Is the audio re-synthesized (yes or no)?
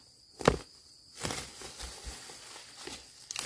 no